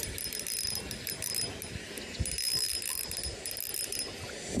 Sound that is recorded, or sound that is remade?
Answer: recorded